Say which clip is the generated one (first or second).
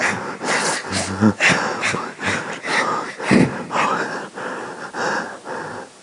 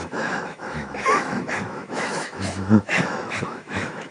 second